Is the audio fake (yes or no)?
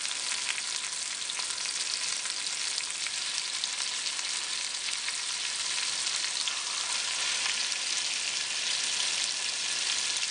no